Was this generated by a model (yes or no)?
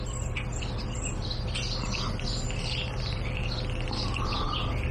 no